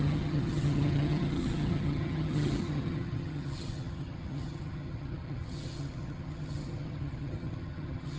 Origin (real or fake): fake